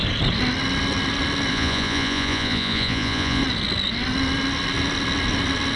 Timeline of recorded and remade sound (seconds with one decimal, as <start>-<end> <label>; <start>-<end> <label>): 0.0-1.5 recorded; 1.5-3.4 remade; 3.4-5.8 recorded